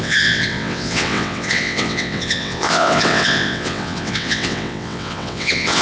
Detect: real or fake fake